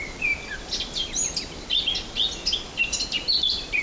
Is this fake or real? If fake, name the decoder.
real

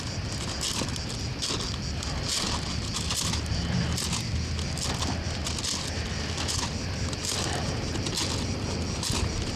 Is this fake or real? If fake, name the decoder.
real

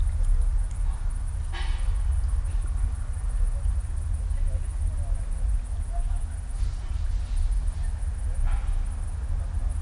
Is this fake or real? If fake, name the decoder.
real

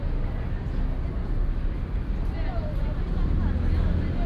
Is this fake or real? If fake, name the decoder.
real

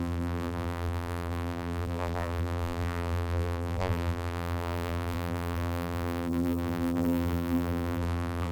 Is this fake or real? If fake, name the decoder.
fake, vocoder, BigVGAN v2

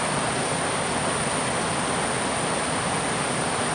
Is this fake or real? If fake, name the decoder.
real